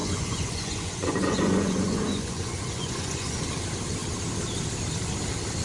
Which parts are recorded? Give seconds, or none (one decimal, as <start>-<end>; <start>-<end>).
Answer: 3.4-5.6